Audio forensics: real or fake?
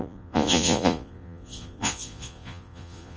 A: fake